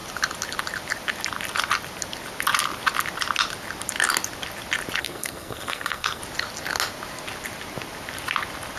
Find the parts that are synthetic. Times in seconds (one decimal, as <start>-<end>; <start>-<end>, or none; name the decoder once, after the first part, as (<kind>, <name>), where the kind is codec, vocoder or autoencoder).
5.0-6.2 (codec, SNAC)